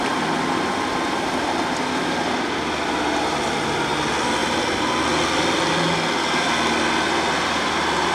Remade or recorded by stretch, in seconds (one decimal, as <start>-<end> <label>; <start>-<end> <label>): 0.0-8.1 recorded